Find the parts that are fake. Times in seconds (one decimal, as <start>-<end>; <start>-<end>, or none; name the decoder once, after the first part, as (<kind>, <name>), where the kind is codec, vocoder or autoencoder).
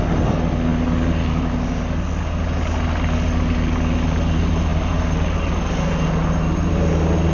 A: none